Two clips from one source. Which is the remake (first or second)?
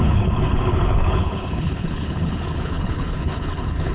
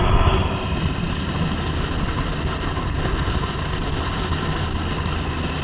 first